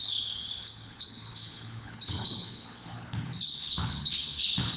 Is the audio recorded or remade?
remade